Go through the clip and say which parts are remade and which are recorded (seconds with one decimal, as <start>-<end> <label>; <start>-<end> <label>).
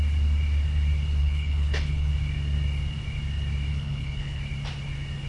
0.0-1.2 recorded; 1.2-2.1 remade; 2.1-3.7 recorded; 3.7-4.4 remade; 4.4-5.3 recorded